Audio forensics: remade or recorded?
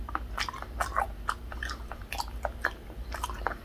recorded